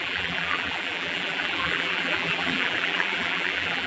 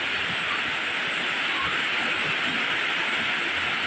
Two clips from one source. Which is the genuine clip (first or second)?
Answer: second